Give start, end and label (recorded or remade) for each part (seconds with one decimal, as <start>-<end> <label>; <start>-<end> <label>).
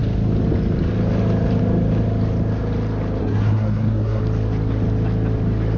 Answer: 0.0-3.2 recorded; 3.2-4.2 remade; 4.2-5.8 recorded